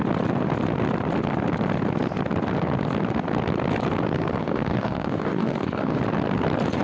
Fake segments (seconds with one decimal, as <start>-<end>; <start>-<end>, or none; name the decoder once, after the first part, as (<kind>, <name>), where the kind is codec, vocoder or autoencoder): 4.4-6.0 (codec, DAC)